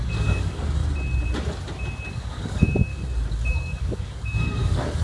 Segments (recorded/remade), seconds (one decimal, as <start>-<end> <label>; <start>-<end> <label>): 0.0-0.8 remade; 0.8-2.1 recorded; 2.1-2.9 remade; 2.9-3.5 recorded; 3.5-5.0 remade